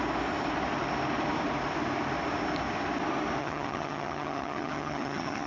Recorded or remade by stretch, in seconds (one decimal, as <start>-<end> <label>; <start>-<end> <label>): 0.0-3.4 recorded; 3.4-5.5 remade